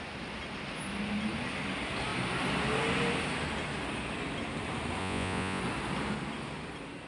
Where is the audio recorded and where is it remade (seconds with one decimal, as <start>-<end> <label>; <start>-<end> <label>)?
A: 0.0-5.0 recorded; 5.0-5.6 remade; 5.6-7.1 recorded